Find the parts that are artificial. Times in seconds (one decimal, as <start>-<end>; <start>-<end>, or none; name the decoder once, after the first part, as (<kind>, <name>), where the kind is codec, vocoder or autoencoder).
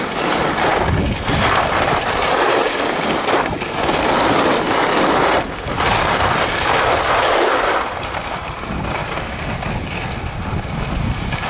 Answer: none